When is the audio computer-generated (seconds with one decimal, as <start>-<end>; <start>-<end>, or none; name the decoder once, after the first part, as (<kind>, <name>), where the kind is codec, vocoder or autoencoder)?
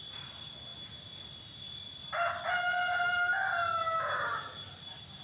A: none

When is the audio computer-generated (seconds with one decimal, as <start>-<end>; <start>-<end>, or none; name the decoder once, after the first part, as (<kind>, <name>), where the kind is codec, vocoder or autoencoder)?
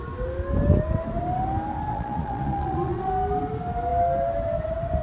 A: 1.9-3.1 (vocoder, Vocos)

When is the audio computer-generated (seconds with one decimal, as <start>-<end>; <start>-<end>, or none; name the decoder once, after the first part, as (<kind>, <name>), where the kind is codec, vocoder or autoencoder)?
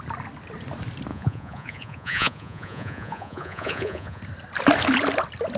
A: 1.1-4.2 (vocoder, Vocos)